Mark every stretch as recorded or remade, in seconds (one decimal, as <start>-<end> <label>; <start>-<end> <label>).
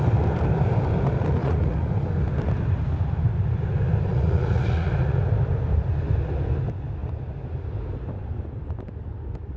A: 0.0-1.4 recorded; 1.4-1.9 remade; 1.9-4.1 recorded; 4.1-5.2 remade; 5.2-9.6 recorded